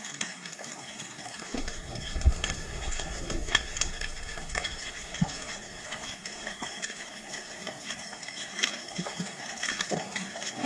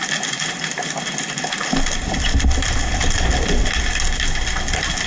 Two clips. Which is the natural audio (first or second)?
second